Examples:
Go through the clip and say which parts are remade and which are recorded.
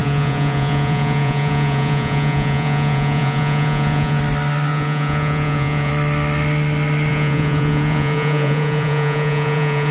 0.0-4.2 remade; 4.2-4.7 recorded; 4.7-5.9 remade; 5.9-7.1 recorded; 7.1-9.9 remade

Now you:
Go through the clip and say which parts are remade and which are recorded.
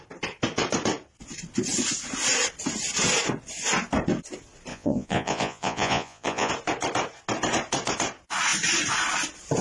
0.0-4.7 recorded; 4.7-6.5 remade; 6.5-9.6 recorded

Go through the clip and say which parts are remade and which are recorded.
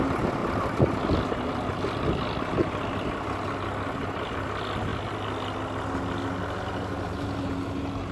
0.0-8.1 recorded